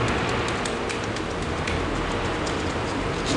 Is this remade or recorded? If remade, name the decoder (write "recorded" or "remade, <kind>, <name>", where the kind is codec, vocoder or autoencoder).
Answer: recorded